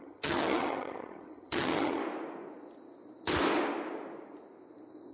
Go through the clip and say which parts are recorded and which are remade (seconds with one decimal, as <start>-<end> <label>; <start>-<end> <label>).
0.0-2.0 remade; 2.0-5.1 recorded